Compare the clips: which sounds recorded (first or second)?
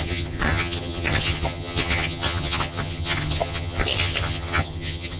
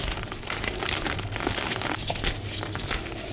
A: second